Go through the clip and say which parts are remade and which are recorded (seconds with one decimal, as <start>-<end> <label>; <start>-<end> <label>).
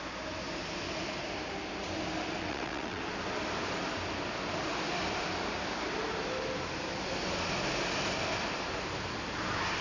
0.0-2.4 recorded; 2.4-3.0 remade; 3.0-9.8 recorded